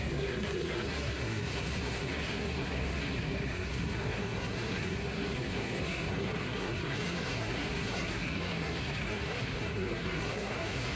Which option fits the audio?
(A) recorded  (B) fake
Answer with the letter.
B